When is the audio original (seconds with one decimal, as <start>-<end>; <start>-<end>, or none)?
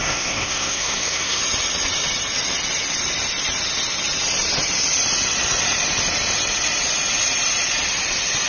1.4-8.5